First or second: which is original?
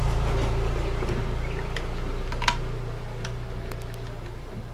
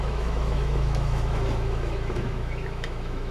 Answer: first